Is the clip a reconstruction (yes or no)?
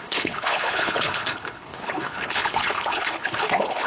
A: yes